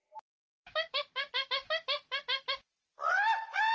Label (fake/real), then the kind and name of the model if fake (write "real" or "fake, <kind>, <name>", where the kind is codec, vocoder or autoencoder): real